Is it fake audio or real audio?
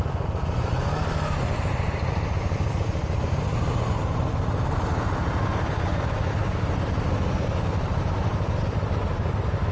real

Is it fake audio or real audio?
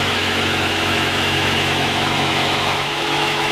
fake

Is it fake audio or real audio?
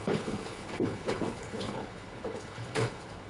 fake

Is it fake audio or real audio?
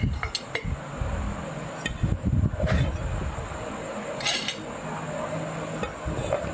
real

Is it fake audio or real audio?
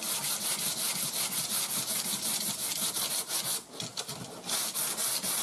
real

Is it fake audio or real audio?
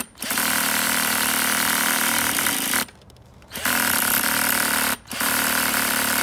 fake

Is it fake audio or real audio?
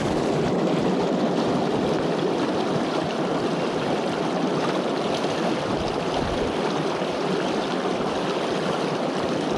real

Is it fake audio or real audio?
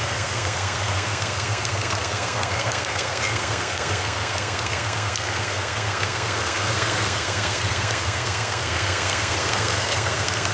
fake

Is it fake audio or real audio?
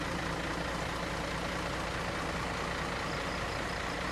real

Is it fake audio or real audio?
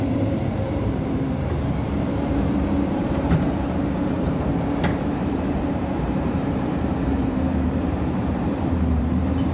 fake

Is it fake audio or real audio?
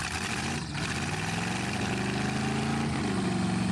real